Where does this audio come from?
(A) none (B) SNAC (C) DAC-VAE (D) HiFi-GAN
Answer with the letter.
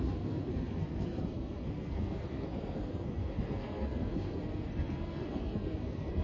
B